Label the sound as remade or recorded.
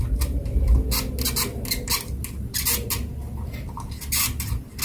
recorded